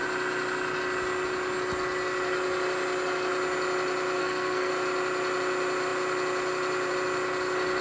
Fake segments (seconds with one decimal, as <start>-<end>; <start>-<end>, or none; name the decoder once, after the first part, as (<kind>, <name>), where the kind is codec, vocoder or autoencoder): 4.2-4.7 (codec, SNAC)